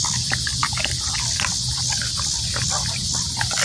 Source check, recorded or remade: recorded